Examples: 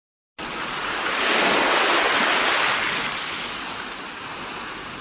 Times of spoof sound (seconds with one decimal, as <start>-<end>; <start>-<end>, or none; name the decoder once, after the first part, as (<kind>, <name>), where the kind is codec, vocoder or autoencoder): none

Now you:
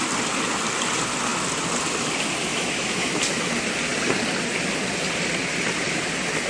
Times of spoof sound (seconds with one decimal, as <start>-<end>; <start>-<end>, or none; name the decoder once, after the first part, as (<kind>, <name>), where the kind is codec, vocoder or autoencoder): 2.5-3.1 (autoencoder, DAC-VAE)

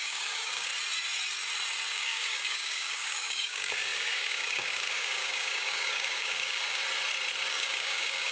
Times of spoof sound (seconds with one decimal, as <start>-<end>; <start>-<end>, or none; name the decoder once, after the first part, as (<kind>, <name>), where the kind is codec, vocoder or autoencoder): 0.0-0.7 (codec, DAC); 1.9-6.8; 7.5-8.3

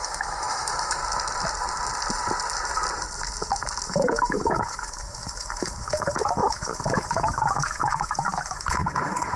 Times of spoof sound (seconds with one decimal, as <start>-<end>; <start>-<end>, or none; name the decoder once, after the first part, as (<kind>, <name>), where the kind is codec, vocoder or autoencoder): 0.0-1.0 (autoencoder, DAC-VAE); 3.9-9.4